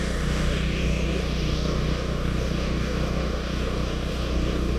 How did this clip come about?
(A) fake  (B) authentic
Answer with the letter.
A